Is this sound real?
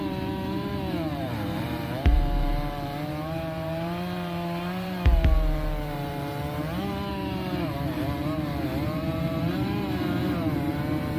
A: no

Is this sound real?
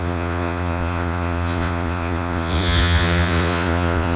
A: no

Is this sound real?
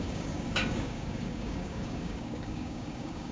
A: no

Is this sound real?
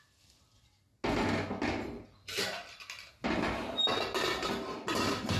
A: yes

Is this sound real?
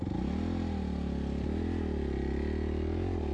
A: yes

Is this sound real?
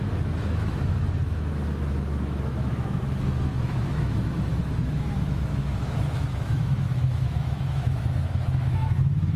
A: no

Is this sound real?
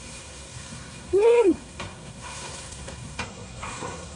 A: no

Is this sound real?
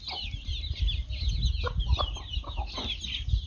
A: yes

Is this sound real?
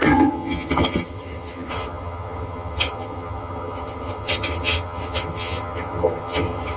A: no